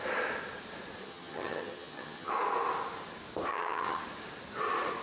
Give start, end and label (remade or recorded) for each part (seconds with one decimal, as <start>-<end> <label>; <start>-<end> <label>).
0.0-1.0 recorded; 1.0-2.3 remade; 2.3-3.5 recorded; 3.5-4.0 remade; 4.0-5.0 recorded